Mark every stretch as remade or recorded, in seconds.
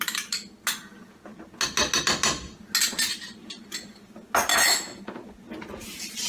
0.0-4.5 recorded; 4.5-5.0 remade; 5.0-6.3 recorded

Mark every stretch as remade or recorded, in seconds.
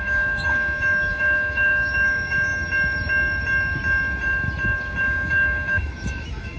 0.0-2.5 remade; 2.5-5.0 recorded; 5.0-6.6 remade